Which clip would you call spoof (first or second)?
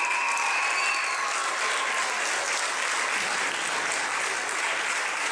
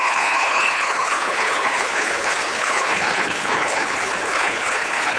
second